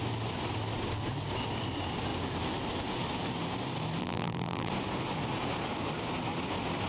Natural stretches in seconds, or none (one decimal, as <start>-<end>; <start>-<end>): 0.0-4.0; 4.7-6.9